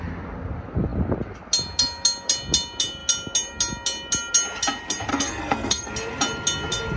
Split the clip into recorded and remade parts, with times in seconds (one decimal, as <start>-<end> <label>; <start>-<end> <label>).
0.0-5.1 recorded; 5.1-5.9 remade; 5.9-7.0 recorded